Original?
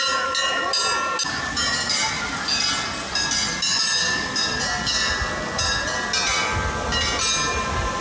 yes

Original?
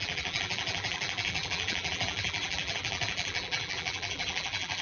no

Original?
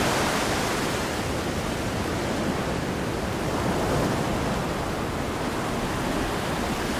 yes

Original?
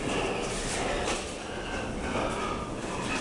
no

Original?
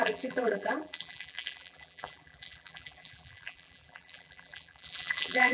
no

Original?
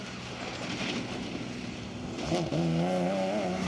yes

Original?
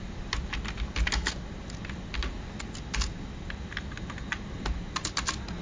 yes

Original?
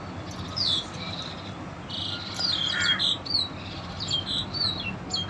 yes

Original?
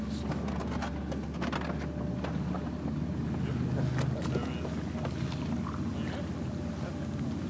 yes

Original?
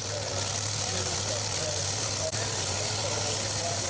yes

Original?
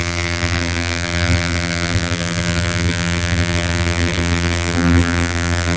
no